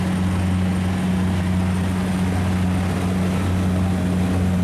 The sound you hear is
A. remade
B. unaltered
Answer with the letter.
B